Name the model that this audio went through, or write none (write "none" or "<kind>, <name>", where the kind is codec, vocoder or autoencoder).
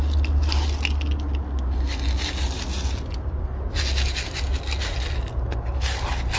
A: none